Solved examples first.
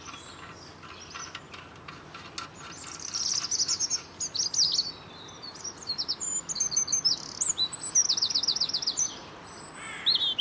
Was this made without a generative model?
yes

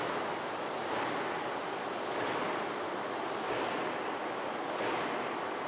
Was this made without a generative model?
yes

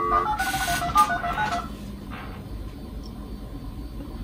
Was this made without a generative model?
yes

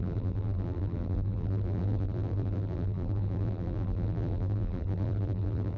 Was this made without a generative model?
no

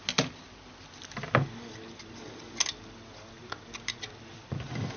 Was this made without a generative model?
yes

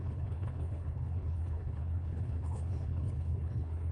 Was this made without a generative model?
no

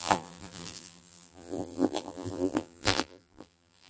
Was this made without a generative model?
no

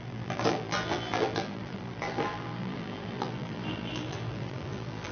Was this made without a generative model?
no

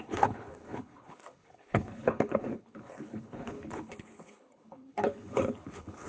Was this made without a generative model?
no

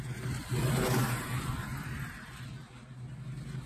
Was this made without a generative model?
yes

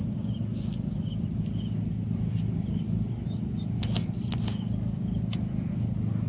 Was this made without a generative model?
yes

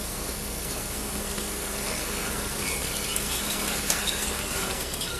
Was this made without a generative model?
no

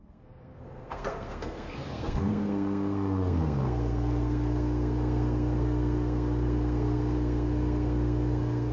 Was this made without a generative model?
no